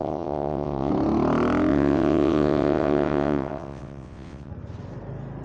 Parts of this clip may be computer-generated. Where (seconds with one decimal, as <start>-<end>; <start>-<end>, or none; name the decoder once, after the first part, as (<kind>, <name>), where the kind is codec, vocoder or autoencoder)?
0.0-0.9 (vocoder, WaveNeXt); 1.7-4.5